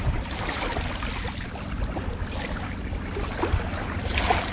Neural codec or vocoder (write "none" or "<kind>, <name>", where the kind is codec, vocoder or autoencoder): none